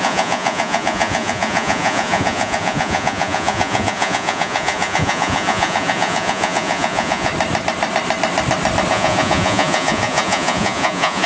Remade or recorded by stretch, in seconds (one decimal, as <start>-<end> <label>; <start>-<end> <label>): 0.0-7.3 remade; 7.3-8.9 recorded; 8.9-11.3 remade